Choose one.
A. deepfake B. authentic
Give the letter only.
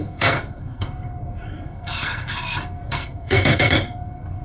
A